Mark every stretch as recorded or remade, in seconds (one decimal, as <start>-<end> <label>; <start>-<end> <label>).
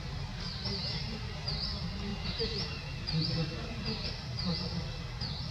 0.0-5.5 recorded